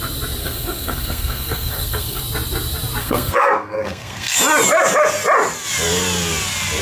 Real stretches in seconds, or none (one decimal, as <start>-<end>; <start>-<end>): 0.0-0.4; 2.2-3.0; 4.4-6.8